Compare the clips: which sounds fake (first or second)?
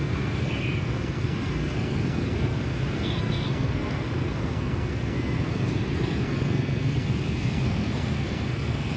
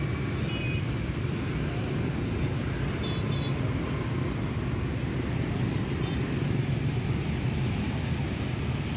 first